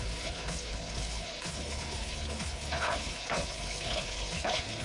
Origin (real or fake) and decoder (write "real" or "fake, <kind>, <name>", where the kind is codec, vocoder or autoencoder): fake, codec, HILCodec